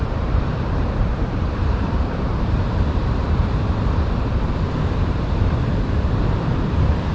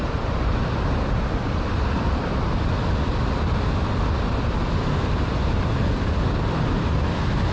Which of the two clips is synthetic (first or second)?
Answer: first